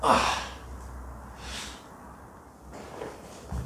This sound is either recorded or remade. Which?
recorded